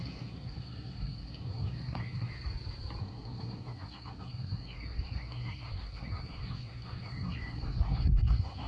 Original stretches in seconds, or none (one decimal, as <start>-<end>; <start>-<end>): 2.3-3.0